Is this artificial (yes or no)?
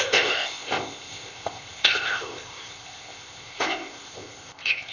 yes